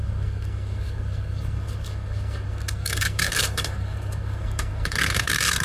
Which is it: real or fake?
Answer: fake